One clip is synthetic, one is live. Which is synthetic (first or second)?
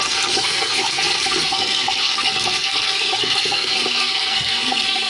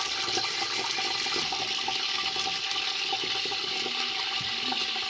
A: first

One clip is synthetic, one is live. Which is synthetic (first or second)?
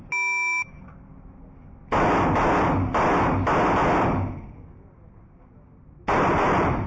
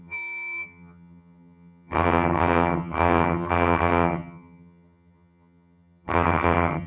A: second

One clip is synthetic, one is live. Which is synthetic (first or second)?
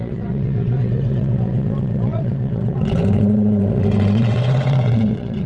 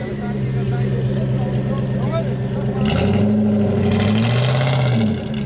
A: first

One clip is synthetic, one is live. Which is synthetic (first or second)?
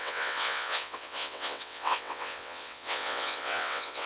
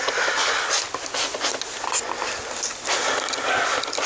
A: first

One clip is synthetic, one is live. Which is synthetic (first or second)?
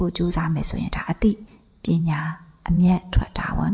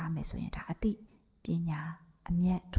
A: first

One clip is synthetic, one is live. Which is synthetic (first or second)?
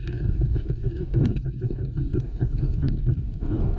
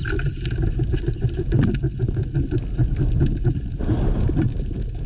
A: first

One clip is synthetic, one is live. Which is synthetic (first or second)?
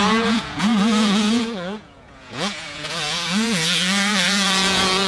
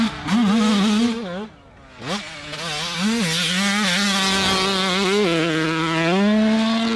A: first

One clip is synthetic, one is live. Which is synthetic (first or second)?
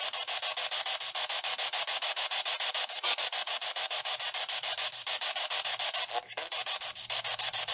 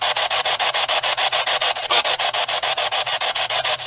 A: second